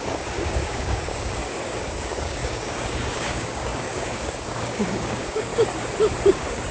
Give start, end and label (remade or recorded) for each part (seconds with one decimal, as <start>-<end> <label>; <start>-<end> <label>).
0.0-5.5 remade; 5.5-6.3 recorded; 6.3-6.7 remade